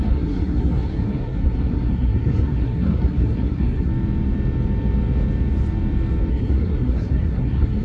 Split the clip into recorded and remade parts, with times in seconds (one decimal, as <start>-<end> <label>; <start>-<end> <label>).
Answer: 0.0-3.9 remade; 3.9-6.3 recorded; 6.3-7.8 remade

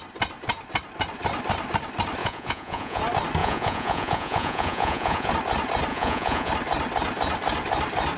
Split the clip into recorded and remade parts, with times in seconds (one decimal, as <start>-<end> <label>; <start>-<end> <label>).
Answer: 0.0-2.2 recorded; 2.2-3.0 remade; 3.0-3.4 recorded; 3.4-5.3 remade; 5.3-5.9 recorded; 5.9-6.5 remade; 6.5-8.2 recorded

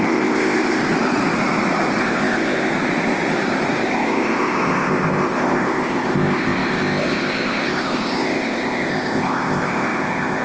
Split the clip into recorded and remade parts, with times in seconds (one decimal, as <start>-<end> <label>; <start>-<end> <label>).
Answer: 0.0-0.8 remade; 0.8-2.0 recorded; 2.0-2.7 remade; 2.7-3.8 recorded; 3.8-10.4 remade

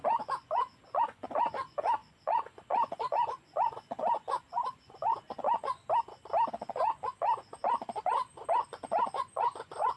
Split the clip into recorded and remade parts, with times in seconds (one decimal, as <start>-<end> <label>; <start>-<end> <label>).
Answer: 0.0-5.8 remade; 5.8-6.5 recorded; 6.5-10.0 remade

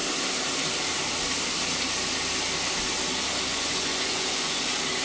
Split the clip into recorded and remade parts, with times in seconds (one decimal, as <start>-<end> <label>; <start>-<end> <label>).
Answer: 0.0-3.5 recorded; 3.5-4.6 remade; 4.6-5.0 recorded

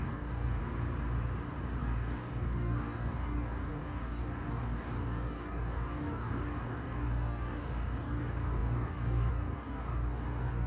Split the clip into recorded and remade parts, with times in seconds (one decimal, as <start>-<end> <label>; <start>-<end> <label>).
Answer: 0.0-0.6 remade; 0.6-1.8 recorded; 1.8-10.7 remade

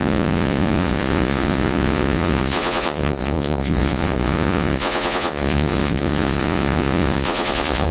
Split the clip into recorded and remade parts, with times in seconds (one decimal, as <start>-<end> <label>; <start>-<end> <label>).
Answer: 0.0-7.9 remade

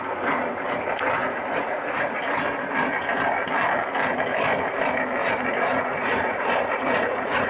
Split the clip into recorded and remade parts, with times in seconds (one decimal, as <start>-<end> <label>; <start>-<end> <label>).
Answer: 0.0-1.2 recorded; 1.2-2.2 remade; 2.2-5.2 recorded; 5.2-7.5 remade